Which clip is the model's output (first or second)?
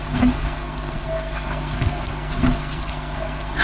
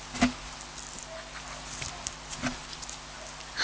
first